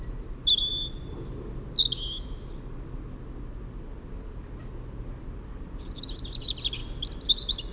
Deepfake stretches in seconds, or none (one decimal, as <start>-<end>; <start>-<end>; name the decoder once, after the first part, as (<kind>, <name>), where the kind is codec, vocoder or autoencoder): none